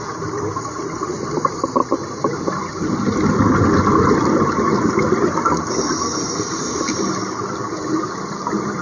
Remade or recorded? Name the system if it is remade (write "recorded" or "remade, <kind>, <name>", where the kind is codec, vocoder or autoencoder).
recorded